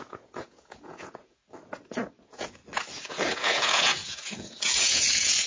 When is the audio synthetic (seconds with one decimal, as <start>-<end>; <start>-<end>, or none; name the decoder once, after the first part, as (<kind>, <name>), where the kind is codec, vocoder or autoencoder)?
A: 0.0-1.4 (vocoder, Vocos); 2.2-2.6; 3.1-5.5